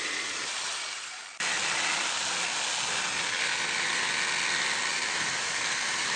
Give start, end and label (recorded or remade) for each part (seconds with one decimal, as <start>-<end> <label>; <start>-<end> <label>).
0.0-1.2 remade; 1.2-4.9 recorded; 4.9-6.2 remade